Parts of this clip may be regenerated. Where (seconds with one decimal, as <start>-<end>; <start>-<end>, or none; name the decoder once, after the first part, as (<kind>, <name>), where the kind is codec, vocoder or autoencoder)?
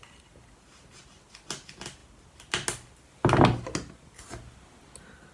none